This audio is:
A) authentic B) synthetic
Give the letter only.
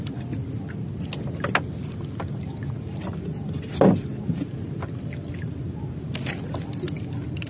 A